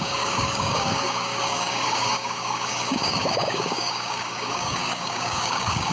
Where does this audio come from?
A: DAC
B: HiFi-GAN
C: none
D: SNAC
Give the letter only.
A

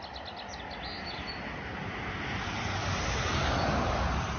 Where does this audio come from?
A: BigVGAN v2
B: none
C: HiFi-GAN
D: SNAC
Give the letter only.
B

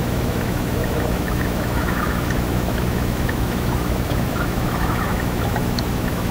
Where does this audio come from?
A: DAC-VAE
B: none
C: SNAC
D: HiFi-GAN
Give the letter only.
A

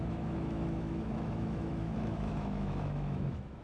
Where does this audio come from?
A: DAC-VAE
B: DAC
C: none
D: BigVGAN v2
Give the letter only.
A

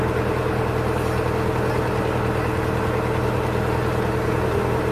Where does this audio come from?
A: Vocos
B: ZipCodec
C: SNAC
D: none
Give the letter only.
D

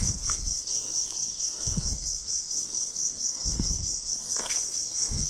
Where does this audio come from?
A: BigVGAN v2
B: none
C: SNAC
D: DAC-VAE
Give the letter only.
C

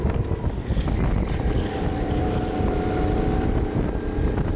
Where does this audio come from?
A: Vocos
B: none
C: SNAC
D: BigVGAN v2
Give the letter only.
B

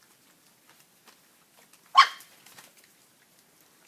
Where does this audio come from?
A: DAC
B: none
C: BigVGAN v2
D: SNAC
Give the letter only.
B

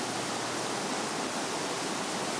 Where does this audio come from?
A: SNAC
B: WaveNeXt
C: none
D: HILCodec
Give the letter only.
C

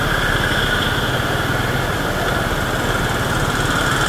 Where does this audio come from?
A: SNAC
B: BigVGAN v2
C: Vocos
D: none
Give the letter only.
D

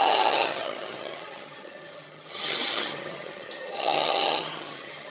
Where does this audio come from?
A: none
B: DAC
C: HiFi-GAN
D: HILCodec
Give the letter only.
C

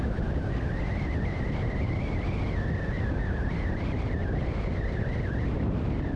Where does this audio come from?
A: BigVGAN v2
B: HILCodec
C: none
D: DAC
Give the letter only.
C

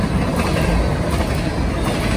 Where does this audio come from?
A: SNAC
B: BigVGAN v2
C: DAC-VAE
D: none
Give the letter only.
D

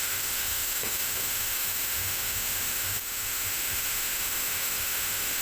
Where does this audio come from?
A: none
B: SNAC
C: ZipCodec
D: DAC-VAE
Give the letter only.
D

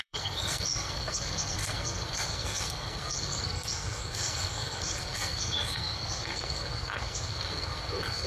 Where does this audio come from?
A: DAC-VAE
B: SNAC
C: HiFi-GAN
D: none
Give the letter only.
B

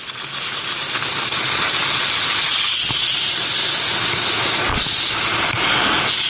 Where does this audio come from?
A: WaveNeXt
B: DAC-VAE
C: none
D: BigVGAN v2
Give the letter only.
C